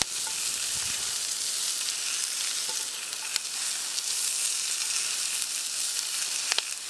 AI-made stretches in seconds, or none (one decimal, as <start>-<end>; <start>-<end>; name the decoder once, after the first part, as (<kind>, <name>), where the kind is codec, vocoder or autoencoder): none